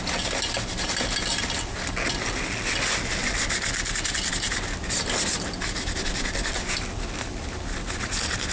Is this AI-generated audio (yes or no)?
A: no